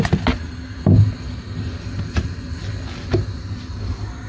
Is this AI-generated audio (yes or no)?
no